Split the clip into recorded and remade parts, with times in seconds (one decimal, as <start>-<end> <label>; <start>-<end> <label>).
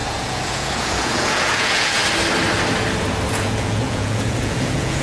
0.0-2.0 remade; 2.0-3.3 recorded; 3.3-5.0 remade